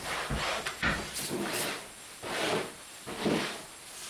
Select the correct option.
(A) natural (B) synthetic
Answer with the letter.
B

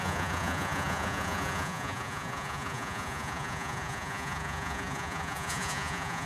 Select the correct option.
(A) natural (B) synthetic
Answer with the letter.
B